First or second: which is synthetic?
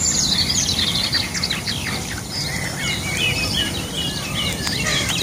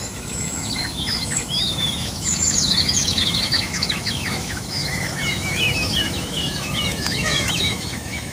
second